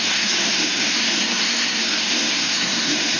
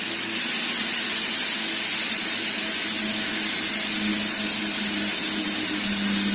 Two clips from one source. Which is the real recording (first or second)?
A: second